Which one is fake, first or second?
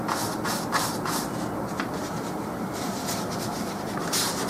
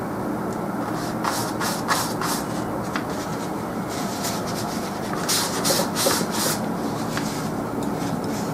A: first